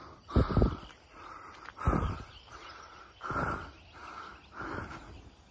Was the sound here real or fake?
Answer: real